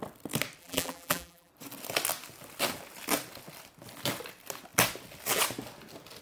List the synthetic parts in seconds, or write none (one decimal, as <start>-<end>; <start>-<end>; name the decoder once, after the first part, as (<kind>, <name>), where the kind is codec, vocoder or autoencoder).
0.6-1.5 (vocoder, BigVGAN v2)